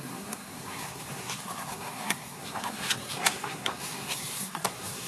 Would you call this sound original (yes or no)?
no